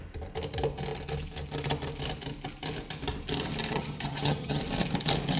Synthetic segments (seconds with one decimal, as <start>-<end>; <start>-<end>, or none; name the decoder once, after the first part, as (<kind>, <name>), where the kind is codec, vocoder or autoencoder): 3.7-4.6 (vocoder, HiFi-GAN)